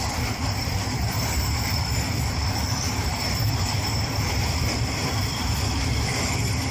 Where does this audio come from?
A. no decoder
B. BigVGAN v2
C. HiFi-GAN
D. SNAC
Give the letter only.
B